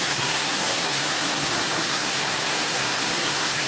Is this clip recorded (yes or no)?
no